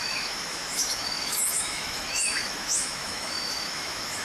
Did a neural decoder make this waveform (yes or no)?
yes